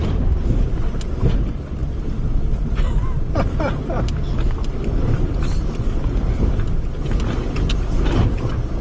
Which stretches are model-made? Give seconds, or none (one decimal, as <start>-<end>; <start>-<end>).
none